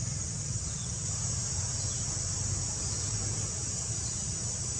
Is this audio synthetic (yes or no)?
no